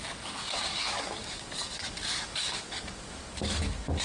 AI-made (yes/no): yes